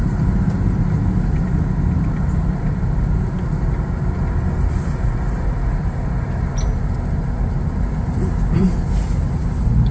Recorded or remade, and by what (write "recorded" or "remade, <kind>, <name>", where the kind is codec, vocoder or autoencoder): recorded